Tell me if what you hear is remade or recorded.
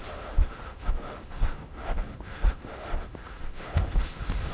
remade